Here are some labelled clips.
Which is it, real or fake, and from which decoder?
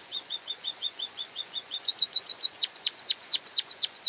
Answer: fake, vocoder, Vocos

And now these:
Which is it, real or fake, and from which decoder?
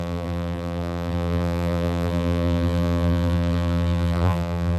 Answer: fake, vocoder, BigVGAN v2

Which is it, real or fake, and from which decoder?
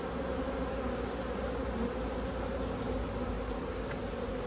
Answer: real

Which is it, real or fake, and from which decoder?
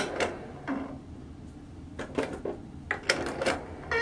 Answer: real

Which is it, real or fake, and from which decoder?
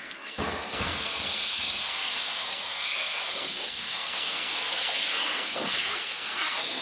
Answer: fake, codec, SNAC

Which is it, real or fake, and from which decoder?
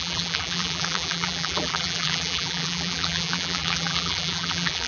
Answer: fake, vocoder, BigVGAN v2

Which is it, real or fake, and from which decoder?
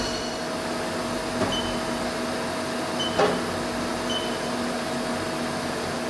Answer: real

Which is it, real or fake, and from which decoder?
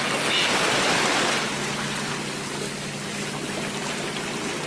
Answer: real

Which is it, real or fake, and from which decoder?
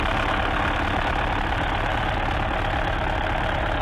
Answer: real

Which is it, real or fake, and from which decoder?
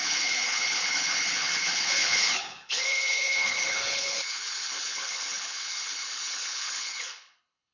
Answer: fake, codec, HILCodec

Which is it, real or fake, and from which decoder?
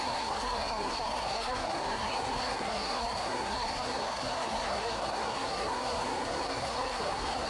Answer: fake, codec, SNAC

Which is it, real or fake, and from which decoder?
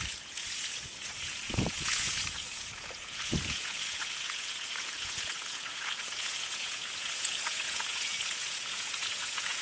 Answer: fake, vocoder, Vocos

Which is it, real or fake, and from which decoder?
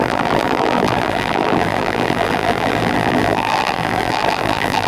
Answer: fake, vocoder, BigVGAN v2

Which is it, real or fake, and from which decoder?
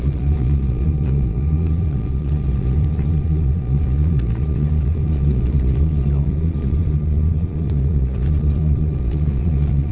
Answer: fake, vocoder, Vocos